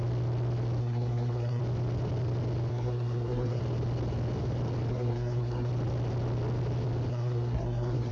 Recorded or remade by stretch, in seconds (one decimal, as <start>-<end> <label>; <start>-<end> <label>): 0.0-0.8 recorded; 0.8-1.6 remade; 1.6-2.7 recorded; 2.7-3.6 remade; 3.6-4.9 recorded; 4.9-5.7 remade; 5.7-7.1 recorded; 7.1-8.1 remade